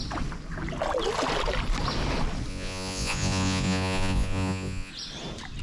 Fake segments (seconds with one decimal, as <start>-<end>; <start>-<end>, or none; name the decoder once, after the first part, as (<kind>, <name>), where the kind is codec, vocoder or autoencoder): 2.5-4.9 (vocoder, Vocos)